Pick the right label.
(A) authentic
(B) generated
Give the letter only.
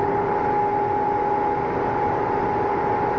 A